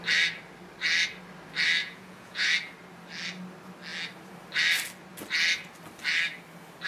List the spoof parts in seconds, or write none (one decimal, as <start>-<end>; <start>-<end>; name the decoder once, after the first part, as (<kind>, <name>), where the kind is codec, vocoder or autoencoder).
1.8-2.5 (vocoder, Vocos)